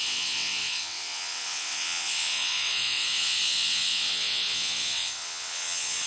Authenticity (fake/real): fake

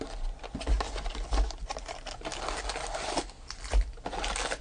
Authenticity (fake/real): real